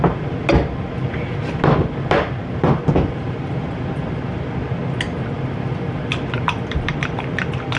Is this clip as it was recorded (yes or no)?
yes